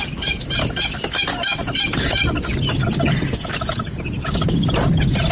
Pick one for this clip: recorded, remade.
recorded